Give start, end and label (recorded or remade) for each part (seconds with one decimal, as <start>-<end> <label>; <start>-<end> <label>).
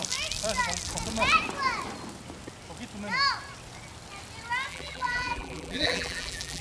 0.0-4.7 recorded; 4.7-6.6 remade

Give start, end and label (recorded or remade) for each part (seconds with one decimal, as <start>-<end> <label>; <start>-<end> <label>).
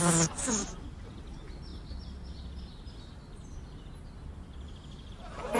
0.0-5.6 recorded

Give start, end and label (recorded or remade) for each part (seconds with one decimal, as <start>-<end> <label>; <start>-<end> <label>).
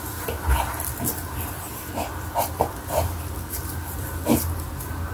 0.0-5.1 recorded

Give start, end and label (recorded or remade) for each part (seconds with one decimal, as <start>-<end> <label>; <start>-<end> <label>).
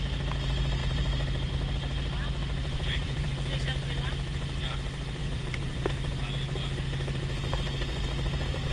0.0-0.8 recorded; 0.8-1.5 remade; 1.5-2.6 recorded; 2.6-3.3 remade; 3.3-5.2 recorded; 5.2-5.8 remade; 5.8-8.7 recorded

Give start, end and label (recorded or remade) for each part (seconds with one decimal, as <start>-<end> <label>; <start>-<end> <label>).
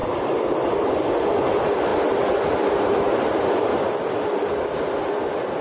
0.0-0.9 remade; 0.9-5.6 recorded